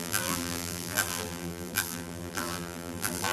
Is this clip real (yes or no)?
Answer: no